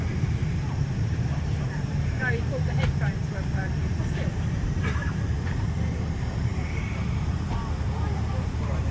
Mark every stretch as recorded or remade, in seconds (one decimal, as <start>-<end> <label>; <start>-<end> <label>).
0.0-3.6 remade; 3.6-4.3 recorded; 4.3-8.9 remade

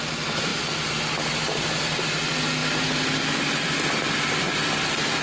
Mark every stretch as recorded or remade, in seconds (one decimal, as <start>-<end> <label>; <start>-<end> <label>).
0.0-5.2 recorded